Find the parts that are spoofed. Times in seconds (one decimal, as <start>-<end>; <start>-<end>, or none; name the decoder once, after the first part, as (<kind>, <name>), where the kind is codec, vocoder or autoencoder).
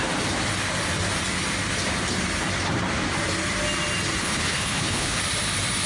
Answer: 4.2-5.2 (codec, HILCodec)